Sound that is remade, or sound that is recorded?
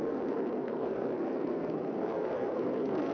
remade